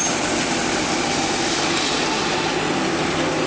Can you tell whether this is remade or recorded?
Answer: recorded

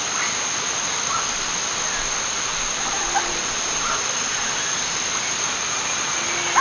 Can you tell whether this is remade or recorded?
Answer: recorded